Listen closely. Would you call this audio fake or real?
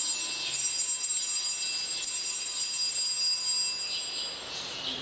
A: real